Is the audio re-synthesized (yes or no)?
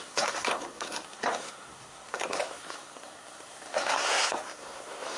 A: yes